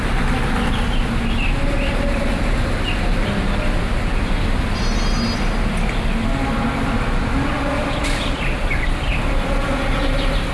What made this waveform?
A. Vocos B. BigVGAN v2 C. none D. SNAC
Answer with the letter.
C